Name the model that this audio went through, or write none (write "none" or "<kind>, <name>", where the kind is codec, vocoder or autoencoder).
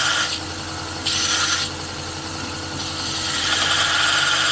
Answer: none